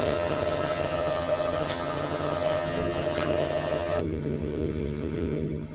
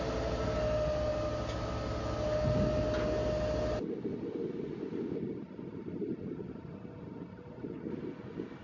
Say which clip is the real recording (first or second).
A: second